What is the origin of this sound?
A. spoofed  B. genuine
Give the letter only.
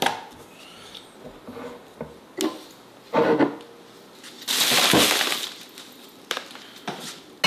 B